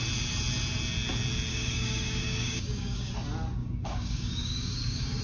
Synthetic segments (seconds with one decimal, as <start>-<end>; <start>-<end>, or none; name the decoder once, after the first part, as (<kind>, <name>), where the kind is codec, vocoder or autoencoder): 1.5-3.1 (codec, DAC); 3.6-5.2